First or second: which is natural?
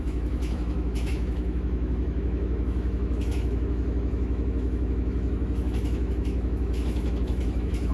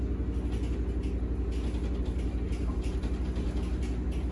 second